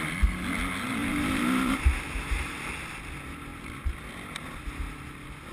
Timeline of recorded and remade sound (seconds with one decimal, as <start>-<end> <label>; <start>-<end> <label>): 0.0-1.0 recorded; 1.0-2.7 remade; 2.7-5.5 recorded